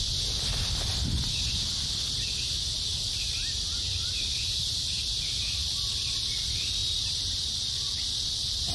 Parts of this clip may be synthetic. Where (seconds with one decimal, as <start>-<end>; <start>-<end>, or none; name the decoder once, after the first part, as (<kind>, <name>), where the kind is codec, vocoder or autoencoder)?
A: 2.9-5.3 (vocoder, BigVGAN v2); 6.8-7.5

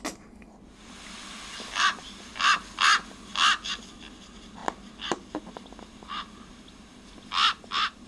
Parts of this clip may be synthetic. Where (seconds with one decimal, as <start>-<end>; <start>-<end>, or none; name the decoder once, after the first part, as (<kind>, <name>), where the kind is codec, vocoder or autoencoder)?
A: none